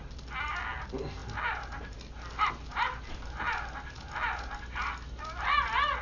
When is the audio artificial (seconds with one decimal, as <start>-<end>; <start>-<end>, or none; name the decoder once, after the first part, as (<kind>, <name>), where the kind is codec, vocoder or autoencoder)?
none